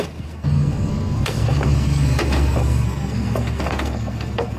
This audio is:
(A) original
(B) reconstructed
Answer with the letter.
B